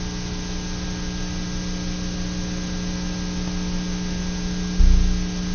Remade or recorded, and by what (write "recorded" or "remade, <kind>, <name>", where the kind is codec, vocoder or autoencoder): recorded